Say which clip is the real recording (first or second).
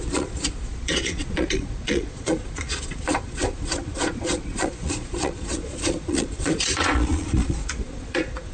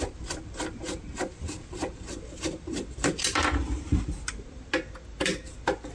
second